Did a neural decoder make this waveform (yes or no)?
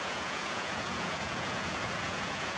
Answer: yes